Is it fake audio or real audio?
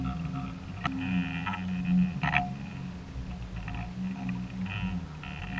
real